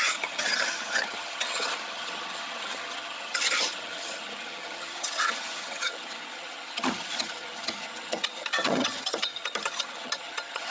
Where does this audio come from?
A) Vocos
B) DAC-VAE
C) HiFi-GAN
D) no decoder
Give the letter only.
C